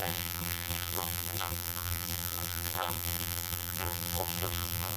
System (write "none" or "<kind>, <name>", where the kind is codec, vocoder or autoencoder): vocoder, BigVGAN v2